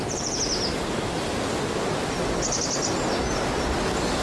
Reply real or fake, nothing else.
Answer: real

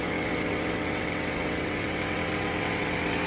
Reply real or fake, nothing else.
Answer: fake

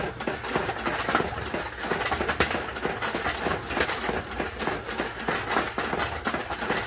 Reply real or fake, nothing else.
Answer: real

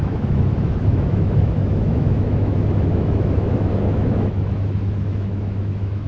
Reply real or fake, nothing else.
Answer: fake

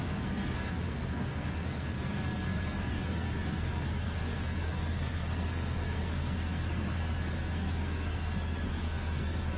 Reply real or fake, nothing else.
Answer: fake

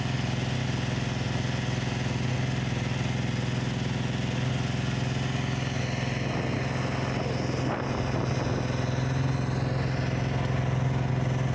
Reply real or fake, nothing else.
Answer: real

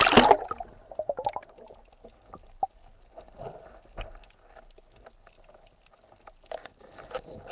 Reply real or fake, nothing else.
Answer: real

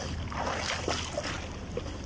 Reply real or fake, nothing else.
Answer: real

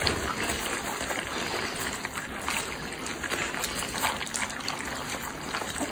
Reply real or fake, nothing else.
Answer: real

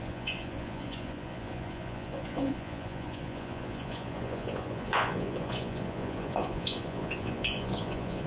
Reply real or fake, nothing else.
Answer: fake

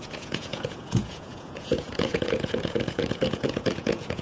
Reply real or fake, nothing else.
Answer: fake